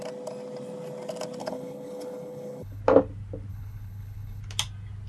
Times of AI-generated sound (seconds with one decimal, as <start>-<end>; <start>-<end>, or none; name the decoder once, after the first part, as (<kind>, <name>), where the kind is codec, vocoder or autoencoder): 1.4-2.8 (codec, HILCodec); 3.5-4.4